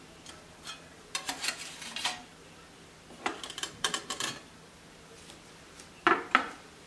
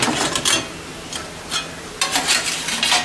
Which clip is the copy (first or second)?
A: first